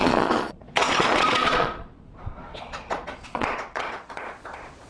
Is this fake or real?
fake